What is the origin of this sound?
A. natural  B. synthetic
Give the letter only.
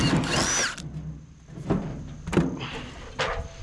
A